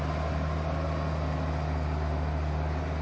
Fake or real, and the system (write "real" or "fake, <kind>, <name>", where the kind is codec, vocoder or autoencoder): real